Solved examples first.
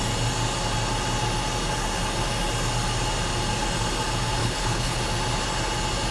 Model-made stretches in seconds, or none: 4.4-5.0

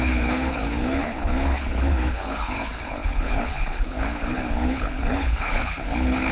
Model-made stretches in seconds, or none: 0.0-6.3

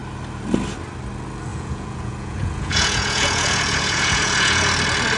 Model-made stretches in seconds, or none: 1.5-4.6

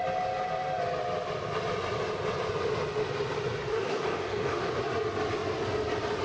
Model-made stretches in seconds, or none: 3.7-4.8

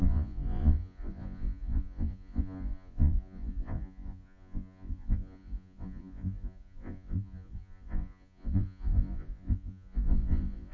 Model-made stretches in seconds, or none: 0.0-10.7

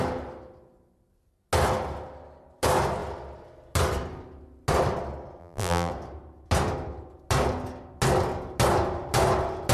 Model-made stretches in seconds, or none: 5.4-5.9